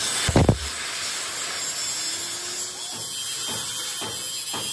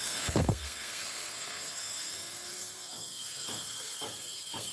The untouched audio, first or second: first